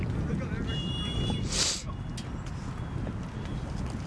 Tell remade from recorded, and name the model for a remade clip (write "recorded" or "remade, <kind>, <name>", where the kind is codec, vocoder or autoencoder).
recorded